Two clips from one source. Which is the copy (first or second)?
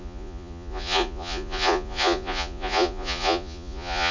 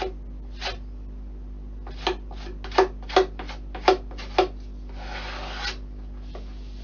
first